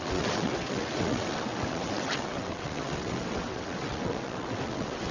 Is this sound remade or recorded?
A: remade